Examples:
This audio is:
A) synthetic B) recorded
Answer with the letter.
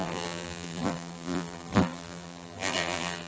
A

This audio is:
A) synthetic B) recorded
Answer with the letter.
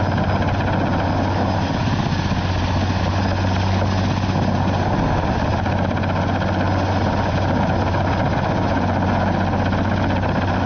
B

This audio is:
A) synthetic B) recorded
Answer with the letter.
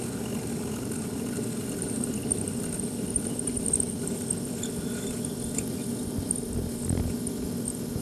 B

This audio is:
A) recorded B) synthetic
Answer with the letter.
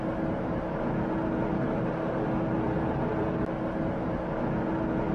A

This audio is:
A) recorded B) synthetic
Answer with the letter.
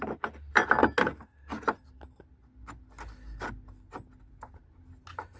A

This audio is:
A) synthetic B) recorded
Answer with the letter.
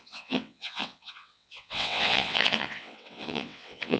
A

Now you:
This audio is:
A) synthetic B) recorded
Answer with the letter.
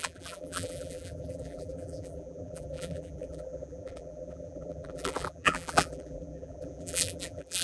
A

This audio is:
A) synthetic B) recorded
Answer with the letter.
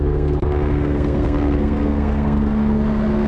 A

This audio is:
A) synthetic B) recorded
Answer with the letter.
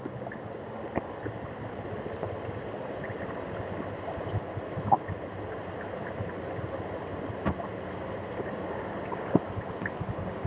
B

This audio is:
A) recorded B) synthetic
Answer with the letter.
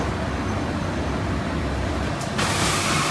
A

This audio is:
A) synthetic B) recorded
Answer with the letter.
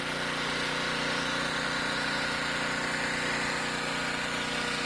B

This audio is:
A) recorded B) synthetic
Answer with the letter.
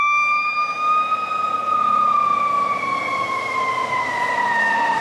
B